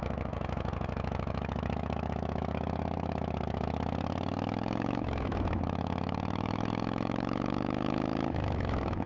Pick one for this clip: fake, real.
fake